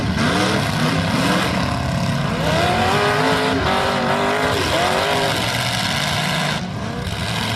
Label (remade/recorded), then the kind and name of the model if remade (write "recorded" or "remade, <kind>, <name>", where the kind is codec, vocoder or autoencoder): recorded